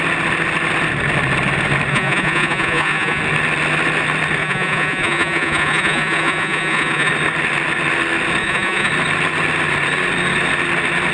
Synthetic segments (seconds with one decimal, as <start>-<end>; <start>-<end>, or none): 1.9-3.2; 4.4-7.1; 8.4-8.9